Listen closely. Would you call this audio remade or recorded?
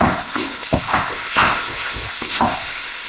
remade